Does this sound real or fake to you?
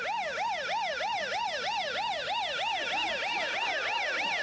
real